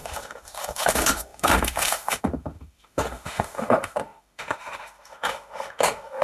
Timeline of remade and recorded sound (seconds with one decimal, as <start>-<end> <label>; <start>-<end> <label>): 0.0-6.2 remade